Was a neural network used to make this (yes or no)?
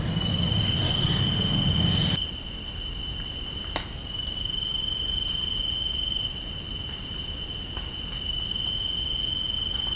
no